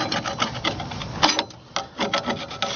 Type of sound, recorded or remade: recorded